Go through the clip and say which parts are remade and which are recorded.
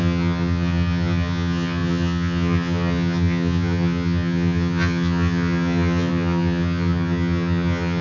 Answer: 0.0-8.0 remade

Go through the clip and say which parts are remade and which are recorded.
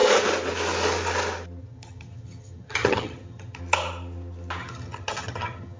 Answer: 0.0-1.6 recorded; 1.6-3.6 remade; 3.6-4.6 recorded; 4.6-5.8 remade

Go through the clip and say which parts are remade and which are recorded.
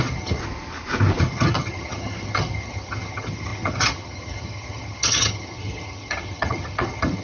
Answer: 0.0-0.4 remade; 0.4-1.2 recorded; 1.2-7.2 remade